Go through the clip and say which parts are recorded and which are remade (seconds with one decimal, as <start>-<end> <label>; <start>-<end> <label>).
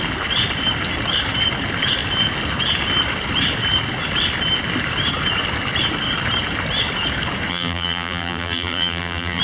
0.0-7.5 recorded; 7.5-9.4 remade